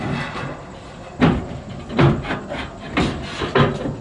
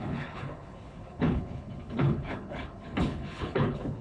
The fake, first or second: second